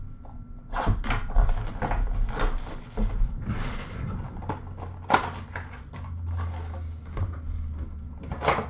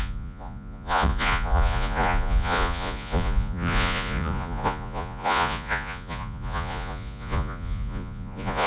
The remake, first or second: second